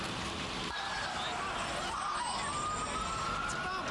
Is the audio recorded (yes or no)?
yes